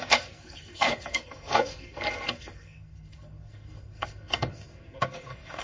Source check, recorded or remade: remade